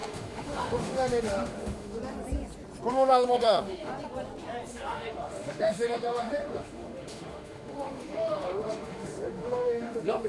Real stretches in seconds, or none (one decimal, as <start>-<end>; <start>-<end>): 2.0-2.9; 3.9-4.7